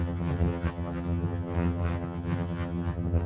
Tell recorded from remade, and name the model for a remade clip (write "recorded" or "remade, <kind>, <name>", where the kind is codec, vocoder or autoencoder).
remade, vocoder, HiFi-GAN